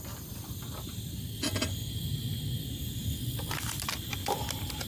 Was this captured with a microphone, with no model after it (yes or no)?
yes